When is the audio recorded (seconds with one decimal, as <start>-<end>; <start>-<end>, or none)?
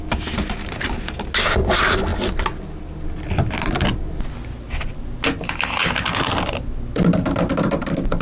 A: 0.0-8.2